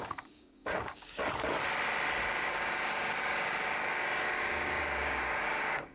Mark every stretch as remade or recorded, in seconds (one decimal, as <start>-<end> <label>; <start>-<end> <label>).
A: 0.0-1.2 remade; 1.2-2.2 recorded; 2.2-5.9 remade